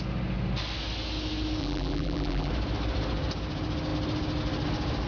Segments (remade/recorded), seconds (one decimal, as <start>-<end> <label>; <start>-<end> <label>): 0.0-1.6 recorded; 1.6-2.5 remade; 2.5-5.1 recorded